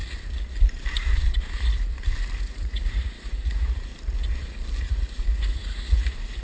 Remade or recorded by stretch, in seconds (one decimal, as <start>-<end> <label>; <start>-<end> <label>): 0.0-2.4 recorded; 2.4-3.9 remade; 3.9-4.8 recorded; 4.8-6.4 remade